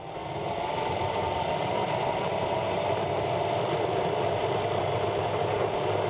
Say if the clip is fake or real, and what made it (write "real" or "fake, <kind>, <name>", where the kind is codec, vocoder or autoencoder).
real